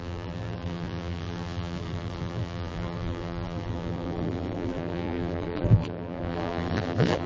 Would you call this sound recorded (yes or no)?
no